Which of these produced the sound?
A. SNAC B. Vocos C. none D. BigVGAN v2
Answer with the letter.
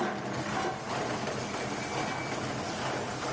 C